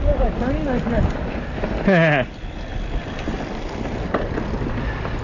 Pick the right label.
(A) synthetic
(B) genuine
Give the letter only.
B